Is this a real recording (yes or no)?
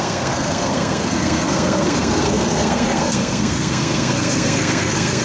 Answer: no